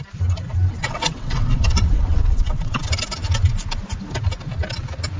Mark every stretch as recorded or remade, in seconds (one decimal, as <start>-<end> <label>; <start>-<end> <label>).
0.0-0.8 recorded; 0.8-2.8 remade; 2.8-5.2 recorded